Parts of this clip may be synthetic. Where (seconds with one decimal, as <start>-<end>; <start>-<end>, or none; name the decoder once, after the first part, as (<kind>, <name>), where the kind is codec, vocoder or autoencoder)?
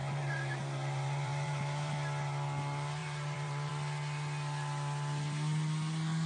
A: 0.0-1.9 (vocoder, BigVGAN v2); 3.0-3.7